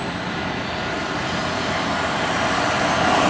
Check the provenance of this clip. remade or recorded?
recorded